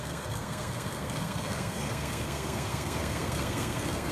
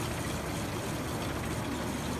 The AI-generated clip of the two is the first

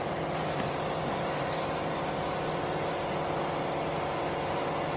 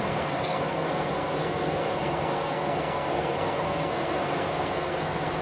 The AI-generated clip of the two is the second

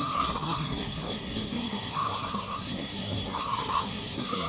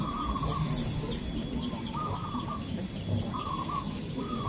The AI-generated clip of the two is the first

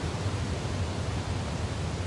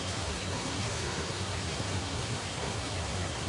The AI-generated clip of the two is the second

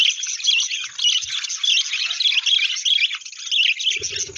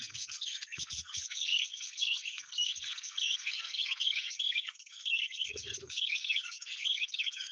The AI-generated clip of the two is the second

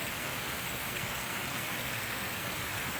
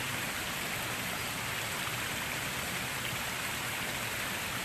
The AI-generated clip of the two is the first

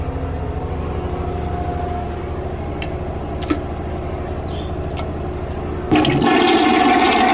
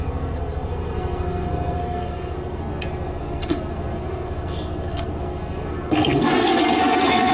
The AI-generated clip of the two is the second